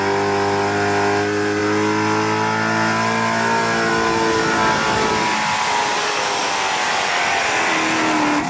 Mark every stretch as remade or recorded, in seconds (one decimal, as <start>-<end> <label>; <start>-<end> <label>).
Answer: 0.0-6.4 recorded; 6.4-7.2 remade; 7.2-8.5 recorded